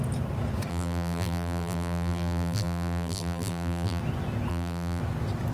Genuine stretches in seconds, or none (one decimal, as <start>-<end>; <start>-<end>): 0.0-0.7; 4.0-4.5; 5.0-5.5